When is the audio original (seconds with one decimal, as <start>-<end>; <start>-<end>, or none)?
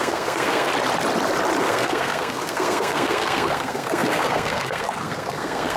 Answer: 0.7-1.6